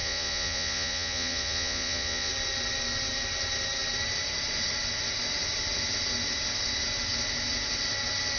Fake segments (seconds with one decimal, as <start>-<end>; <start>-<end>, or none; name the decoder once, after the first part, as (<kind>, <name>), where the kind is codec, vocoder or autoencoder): 0.0-2.3 (vocoder, Vocos)